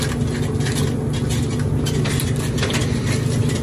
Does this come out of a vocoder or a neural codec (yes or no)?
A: no